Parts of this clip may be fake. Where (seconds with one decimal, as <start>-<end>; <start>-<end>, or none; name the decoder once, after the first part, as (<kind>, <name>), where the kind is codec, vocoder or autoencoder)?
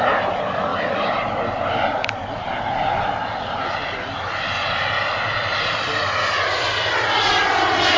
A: none